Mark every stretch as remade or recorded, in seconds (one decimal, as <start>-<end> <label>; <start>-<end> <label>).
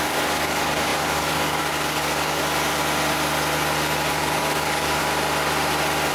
0.0-2.4 remade; 2.4-4.1 recorded; 4.1-5.0 remade; 5.0-6.1 recorded